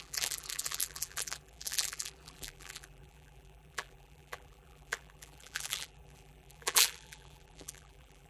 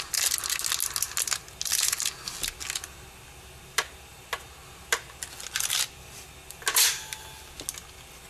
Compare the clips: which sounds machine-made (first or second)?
first